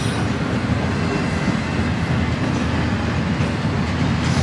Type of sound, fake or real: real